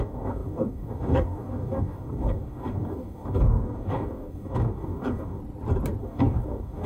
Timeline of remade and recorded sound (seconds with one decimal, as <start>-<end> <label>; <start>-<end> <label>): 0.0-5.4 remade; 5.4-6.0 recorded; 6.0-6.9 remade